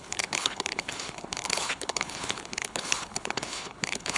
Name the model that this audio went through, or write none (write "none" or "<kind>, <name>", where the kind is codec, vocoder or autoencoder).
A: codec, HILCodec